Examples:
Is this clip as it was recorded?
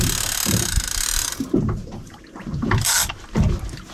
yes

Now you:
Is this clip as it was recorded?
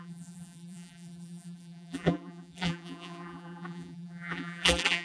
no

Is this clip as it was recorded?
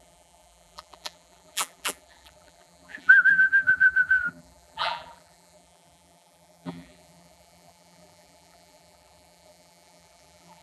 no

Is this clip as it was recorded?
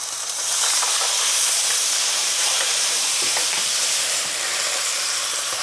no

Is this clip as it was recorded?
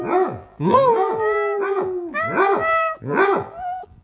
no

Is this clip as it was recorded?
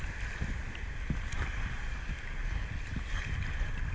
yes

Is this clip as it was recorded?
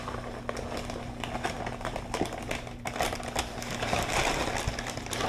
yes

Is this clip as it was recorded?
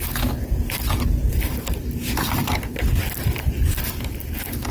no